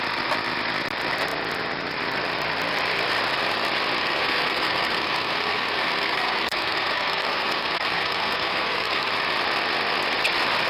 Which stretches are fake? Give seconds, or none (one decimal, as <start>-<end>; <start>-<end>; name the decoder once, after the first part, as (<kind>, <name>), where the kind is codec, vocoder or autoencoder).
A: 4.0-9.1 (codec, SNAC)